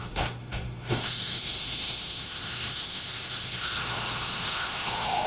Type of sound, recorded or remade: remade